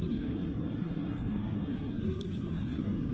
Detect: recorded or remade remade